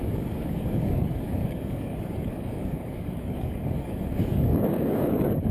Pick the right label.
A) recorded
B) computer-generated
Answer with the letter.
B